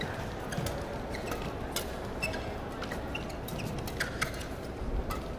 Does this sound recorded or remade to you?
recorded